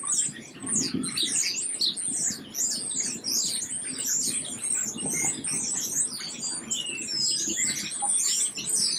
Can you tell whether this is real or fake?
real